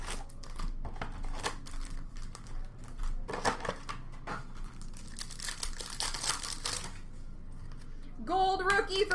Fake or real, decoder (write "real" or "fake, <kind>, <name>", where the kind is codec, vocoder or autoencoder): real